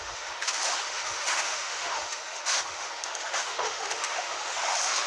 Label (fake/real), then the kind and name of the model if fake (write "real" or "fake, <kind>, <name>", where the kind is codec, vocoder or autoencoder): fake, autoencoder, DAC-VAE